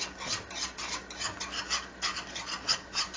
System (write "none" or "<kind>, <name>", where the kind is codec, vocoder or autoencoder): none